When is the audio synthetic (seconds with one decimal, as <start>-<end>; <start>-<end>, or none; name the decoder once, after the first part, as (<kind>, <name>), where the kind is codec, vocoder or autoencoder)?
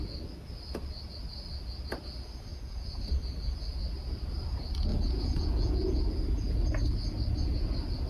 2.5-3.0 (vocoder, Vocos); 4.9-6.0